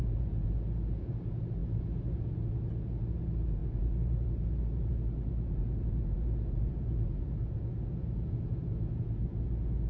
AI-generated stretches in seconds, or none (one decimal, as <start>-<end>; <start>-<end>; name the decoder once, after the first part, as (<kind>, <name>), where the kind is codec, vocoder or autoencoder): 0.0-9.9 (vocoder, Vocos)